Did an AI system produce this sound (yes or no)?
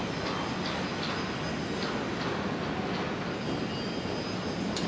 no